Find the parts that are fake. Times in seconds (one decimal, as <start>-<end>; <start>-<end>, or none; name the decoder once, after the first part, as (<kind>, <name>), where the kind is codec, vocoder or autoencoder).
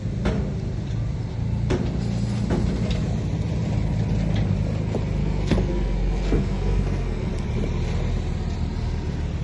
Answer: 5.2-7.3 (codec, SNAC)